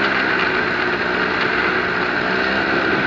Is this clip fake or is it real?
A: real